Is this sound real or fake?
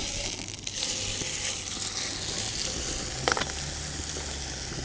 real